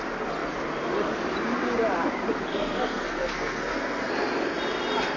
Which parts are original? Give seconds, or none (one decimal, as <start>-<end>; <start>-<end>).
0.0-2.5; 4.1-5.2